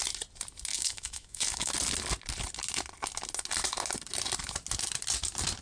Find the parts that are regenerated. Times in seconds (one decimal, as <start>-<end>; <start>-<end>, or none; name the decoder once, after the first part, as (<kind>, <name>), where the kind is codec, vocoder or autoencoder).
0.7-1.7 (autoencoder, DAC-VAE)